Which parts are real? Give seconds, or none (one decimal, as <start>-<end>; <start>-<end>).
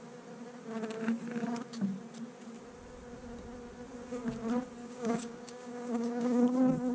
0.0-4.8; 6.4-6.9